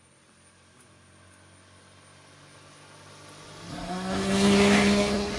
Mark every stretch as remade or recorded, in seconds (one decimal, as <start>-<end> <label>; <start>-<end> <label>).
0.0-3.7 recorded; 3.7-5.4 remade